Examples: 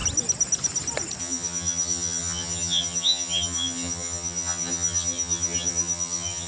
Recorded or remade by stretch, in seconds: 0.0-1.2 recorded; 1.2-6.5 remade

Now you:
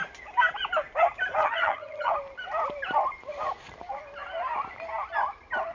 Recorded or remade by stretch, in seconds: 0.0-1.4 recorded; 1.4-2.1 remade; 2.1-5.7 recorded